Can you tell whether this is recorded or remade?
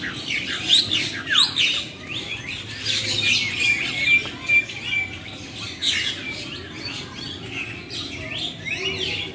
recorded